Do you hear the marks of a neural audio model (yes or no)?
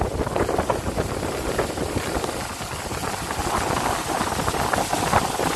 no